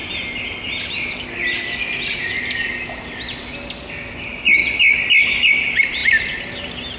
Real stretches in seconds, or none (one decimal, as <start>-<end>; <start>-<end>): 0.0-4.1; 4.6-5.5; 6.0-7.0